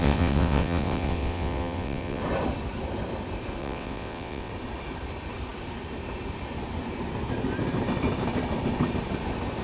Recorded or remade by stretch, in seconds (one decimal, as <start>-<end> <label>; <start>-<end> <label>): 0.0-2.2 remade; 2.2-3.6 recorded; 3.6-4.5 remade; 4.5-9.6 recorded